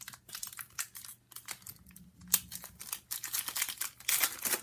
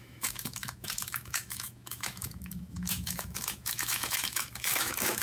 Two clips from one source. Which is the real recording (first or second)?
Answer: first